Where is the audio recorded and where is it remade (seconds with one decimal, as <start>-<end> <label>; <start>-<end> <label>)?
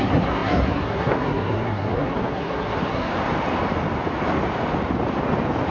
0.0-3.1 remade; 3.1-5.7 recorded